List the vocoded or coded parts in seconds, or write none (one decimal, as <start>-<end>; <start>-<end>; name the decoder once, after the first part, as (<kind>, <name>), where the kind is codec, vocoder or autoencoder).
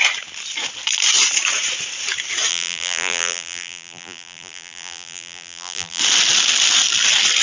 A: 2.5-6.0 (vocoder, BigVGAN v2)